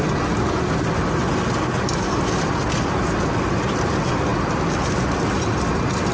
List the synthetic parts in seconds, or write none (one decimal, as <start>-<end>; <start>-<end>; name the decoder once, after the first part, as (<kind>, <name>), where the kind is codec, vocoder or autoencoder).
none